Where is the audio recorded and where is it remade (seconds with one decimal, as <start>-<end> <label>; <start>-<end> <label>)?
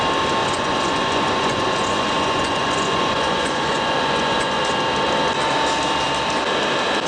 0.0-0.4 recorded; 0.4-4.6 remade; 4.6-7.1 recorded